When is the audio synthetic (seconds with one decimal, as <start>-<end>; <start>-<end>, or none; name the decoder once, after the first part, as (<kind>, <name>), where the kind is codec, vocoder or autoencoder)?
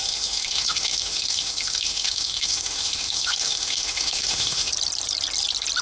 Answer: 0.0-4.7 (autoencoder, DAC-VAE)